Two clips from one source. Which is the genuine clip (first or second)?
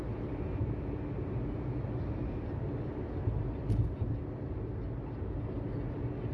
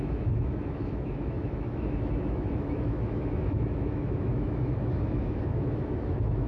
first